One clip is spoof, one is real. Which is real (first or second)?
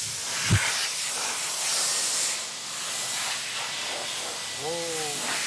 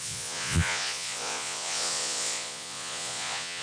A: first